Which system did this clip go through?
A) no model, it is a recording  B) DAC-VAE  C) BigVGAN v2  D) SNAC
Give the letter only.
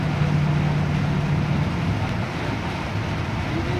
A